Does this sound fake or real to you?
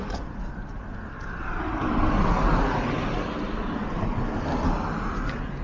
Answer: real